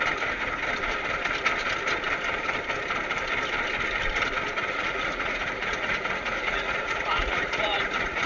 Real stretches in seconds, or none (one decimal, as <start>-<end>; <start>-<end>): 0.0-4.6